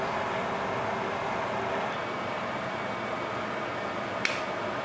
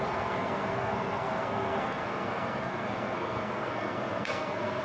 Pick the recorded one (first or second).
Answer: first